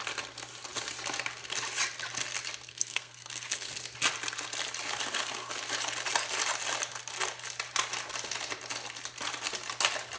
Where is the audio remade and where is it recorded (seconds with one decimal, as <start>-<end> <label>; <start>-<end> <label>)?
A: 0.0-2.7 recorded; 2.7-3.7 remade; 3.7-10.2 recorded